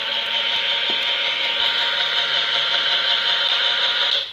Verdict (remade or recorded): remade